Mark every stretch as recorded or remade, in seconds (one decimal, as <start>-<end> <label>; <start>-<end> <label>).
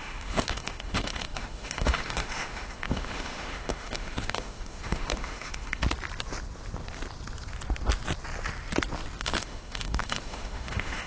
0.0-5.8 remade; 5.8-9.2 recorded; 9.2-11.1 remade